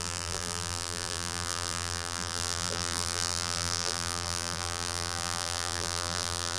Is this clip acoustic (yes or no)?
no